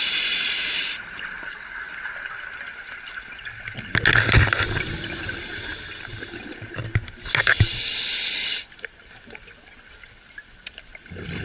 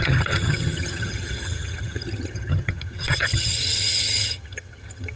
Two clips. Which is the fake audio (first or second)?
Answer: second